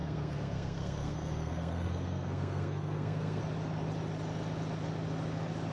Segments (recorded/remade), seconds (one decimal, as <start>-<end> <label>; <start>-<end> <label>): 0.0-3.4 remade; 3.4-5.7 recorded